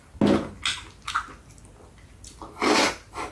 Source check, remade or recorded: recorded